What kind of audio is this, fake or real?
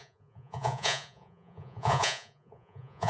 fake